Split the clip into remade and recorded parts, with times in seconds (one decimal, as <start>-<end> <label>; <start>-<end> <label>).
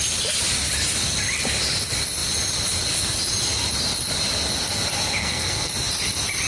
0.0-5.2 recorded; 5.2-5.7 remade; 5.7-6.5 recorded